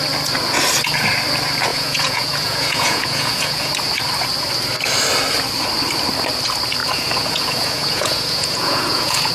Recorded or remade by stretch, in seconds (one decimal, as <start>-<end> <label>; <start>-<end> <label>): 0.0-1.7 recorded; 1.7-3.7 remade; 3.7-6.8 recorded; 6.8-9.3 remade